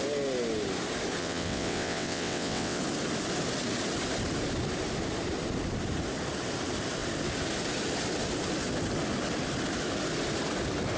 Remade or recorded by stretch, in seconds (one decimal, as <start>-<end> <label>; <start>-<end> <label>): 0.0-1.2 recorded; 1.2-2.8 remade; 2.8-11.0 recorded